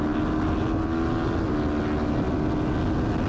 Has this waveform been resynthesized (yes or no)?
no